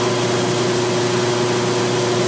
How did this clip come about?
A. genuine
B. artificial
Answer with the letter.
A